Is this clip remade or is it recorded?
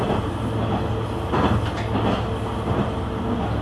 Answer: recorded